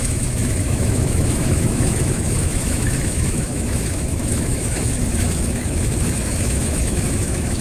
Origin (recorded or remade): remade